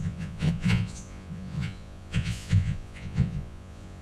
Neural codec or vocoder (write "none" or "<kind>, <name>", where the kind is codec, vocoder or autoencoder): vocoder, Vocos